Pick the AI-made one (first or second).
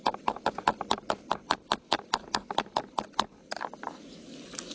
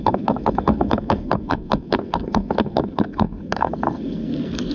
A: second